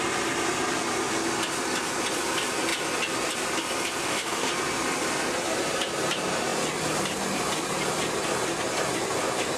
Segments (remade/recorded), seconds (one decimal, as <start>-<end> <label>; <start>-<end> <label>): 0.0-4.0 recorded; 4.0-4.5 remade; 4.5-9.6 recorded